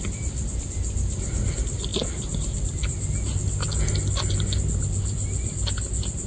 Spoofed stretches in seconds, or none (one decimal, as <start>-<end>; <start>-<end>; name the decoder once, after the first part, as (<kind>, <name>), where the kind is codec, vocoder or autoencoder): none